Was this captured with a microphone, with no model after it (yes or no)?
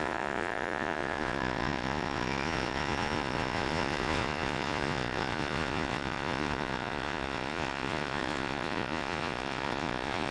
no